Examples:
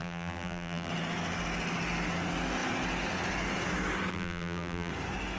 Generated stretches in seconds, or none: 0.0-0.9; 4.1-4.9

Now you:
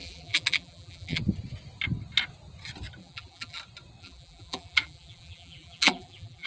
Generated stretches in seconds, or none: 0.0-1.2; 3.0-3.6; 4.0-6.5

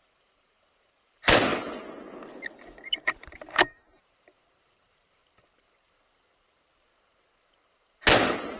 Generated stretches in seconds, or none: 0.0-1.5; 3.0-5.2

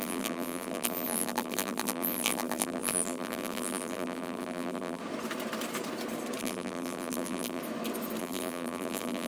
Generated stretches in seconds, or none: 0.0-5.0; 6.4-7.6; 8.2-9.3

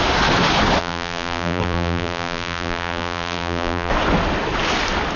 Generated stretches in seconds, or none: 0.8-3.9

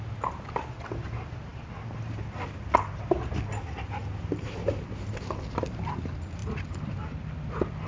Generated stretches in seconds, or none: 1.5-4.0; 6.4-7.5

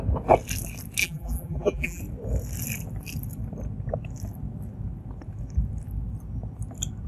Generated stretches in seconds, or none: 1.0-2.0

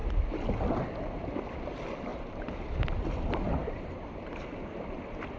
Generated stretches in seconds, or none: 2.1-2.8; 3.6-4.3